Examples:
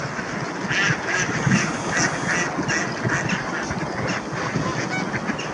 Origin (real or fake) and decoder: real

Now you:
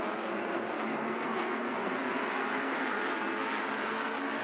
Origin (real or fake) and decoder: fake, codec, SNAC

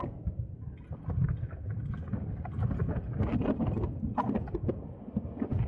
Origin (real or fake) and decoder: real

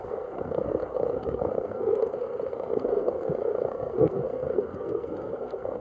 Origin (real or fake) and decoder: fake, codec, SNAC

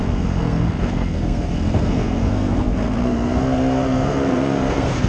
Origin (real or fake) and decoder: fake, codec, SNAC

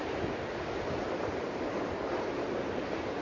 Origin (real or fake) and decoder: real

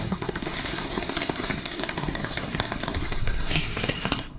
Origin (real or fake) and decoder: fake, codec, SNAC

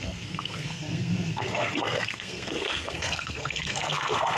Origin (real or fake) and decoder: fake, codec, SNAC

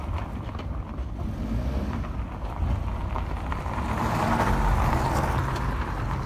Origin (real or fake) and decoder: real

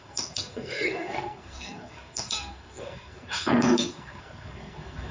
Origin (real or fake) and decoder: fake, codec, SNAC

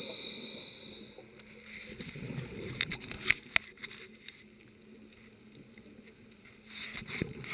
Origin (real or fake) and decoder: real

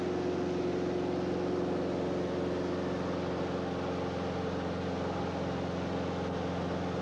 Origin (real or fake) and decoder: real